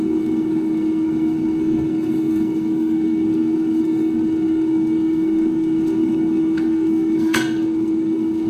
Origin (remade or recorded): remade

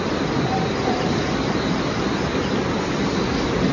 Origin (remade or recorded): recorded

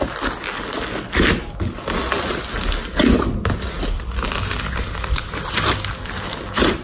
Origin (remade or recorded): recorded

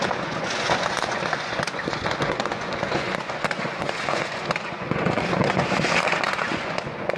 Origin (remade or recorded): remade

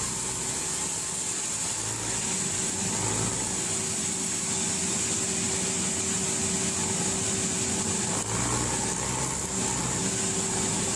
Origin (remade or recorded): recorded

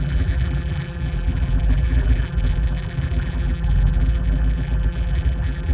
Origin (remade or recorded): remade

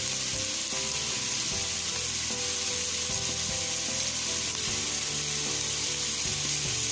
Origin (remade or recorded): recorded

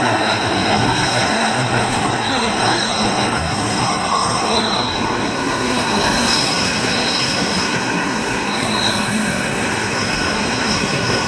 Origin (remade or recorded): remade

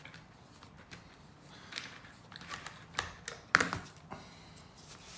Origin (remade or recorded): recorded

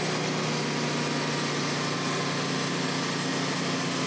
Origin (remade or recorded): recorded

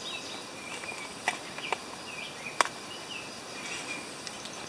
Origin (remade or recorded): recorded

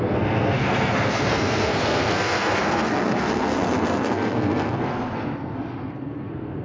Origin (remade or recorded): remade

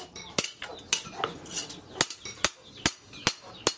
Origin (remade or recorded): recorded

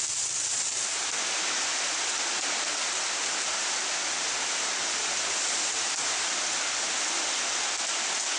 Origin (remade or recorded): recorded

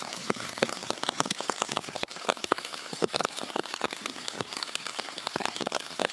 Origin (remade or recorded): remade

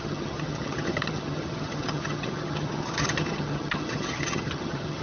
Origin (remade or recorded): remade